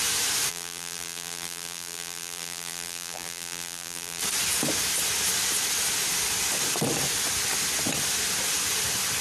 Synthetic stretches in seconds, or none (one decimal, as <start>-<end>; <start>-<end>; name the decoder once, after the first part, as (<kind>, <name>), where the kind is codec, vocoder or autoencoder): 0.5-4.2 (vocoder, BigVGAN v2)